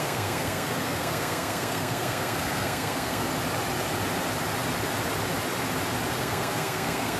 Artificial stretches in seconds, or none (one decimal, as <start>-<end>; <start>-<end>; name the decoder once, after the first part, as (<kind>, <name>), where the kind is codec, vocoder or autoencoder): 0.0-3.3 (codec, SNAC); 6.2-7.2